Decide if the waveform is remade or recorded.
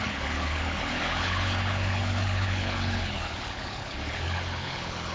remade